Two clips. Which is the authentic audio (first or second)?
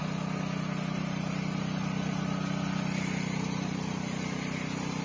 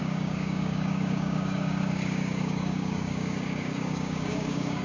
first